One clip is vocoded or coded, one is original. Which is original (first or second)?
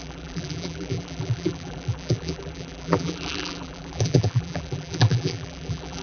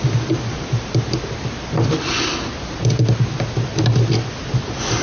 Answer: second